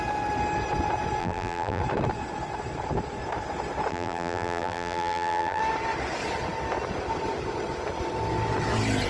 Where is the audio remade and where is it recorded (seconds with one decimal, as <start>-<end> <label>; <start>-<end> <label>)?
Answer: 0.0-1.2 recorded; 1.2-1.8 remade; 1.8-3.9 recorded; 3.9-5.6 remade; 5.6-9.1 recorded